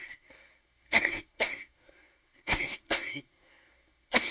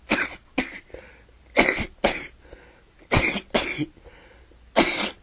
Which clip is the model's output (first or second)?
first